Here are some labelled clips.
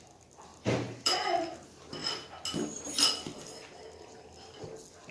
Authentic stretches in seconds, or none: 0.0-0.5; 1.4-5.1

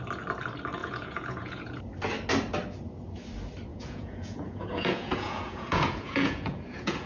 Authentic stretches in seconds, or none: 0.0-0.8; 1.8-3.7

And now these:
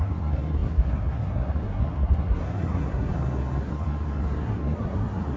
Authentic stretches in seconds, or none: none